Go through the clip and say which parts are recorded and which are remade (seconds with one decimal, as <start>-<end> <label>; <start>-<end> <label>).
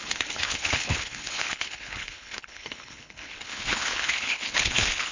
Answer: 0.0-5.1 remade